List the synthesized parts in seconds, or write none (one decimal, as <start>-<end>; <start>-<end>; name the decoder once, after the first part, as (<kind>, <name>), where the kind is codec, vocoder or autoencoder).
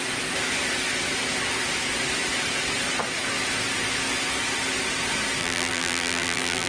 5.4-6.7 (vocoder, BigVGAN v2)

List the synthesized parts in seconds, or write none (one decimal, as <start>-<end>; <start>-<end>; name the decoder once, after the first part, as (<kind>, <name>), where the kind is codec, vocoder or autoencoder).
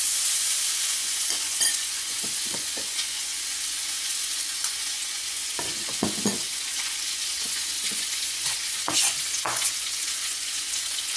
0.0-11.2 (vocoder, Vocos)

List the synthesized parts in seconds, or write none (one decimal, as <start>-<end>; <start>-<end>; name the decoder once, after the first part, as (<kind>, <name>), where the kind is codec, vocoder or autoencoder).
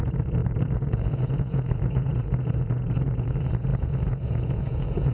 0.0-5.1 (vocoder, Vocos)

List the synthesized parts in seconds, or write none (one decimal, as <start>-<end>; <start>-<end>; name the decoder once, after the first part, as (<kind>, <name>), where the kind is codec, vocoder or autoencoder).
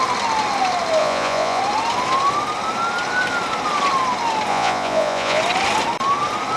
1.0-1.6 (vocoder, Vocos); 4.5-5.4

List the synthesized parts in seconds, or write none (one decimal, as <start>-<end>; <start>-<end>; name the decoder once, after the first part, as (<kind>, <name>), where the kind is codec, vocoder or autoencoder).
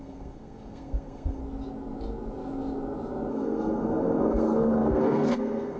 0.0-1.4 (codec, SNAC); 3.3-5.8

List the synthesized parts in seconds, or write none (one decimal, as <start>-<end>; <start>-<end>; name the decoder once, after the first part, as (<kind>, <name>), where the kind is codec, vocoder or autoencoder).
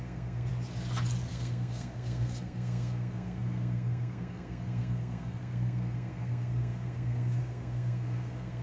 0.0-0.5 (codec, SNAC); 1.3-8.6